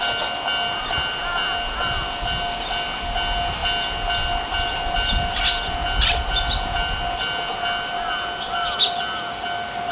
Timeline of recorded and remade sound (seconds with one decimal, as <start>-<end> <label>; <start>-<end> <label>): 0.0-9.9 recorded